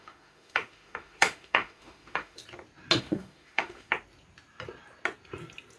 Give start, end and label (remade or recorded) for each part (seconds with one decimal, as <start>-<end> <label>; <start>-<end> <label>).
0.0-2.4 remade; 2.4-3.0 recorded; 3.0-3.9 remade; 3.9-5.8 recorded